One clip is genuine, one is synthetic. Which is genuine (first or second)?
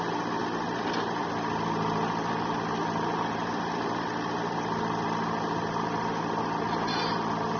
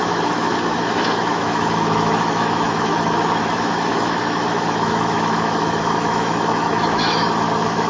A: first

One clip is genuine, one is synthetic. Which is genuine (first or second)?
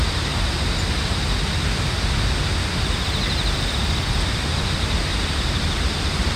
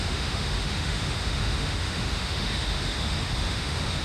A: first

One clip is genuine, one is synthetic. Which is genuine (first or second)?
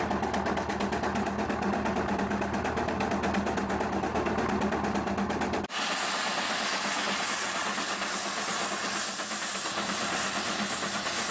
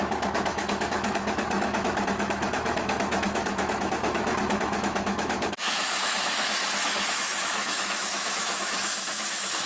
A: first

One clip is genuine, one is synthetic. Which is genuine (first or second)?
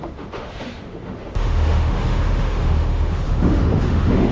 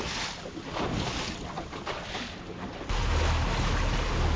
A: second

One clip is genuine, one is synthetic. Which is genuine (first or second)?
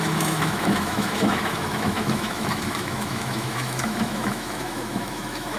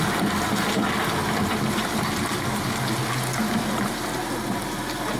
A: second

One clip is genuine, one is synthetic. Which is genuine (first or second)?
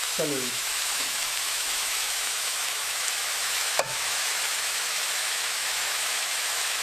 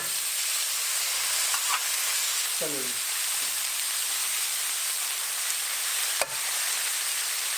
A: second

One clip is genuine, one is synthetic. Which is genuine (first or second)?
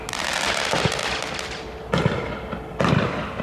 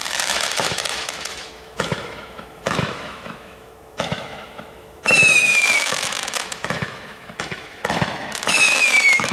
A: first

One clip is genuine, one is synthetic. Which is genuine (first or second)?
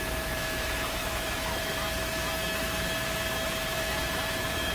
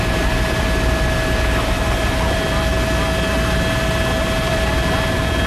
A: second